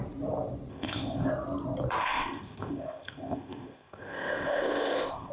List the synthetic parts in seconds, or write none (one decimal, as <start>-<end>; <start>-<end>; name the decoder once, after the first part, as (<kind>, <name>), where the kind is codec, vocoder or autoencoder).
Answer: 0.7-1.3 (codec, ZipCodec); 2.0-5.3